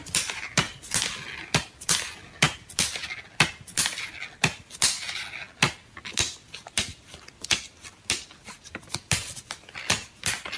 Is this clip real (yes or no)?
yes